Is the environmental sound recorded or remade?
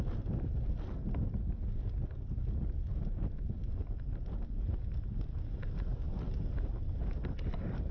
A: recorded